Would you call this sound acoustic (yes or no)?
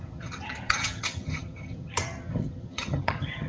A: no